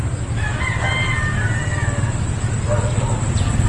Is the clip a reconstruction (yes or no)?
no